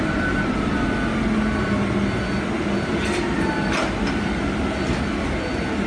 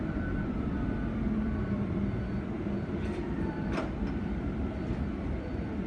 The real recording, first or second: first